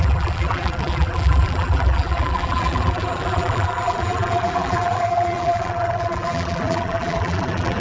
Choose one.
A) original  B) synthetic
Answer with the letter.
B